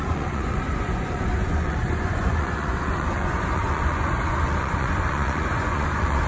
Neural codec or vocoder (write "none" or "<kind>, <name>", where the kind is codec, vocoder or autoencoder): vocoder, Vocos